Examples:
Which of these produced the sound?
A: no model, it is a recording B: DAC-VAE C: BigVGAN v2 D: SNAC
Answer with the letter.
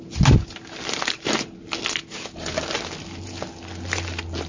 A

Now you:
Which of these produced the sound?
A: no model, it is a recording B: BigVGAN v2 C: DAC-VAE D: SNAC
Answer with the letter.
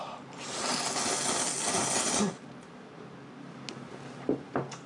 A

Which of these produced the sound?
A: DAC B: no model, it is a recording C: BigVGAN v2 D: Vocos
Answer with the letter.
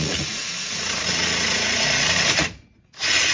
D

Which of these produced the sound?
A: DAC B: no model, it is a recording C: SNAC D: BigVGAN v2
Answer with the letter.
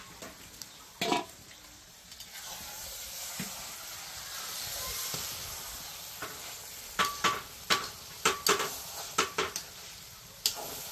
B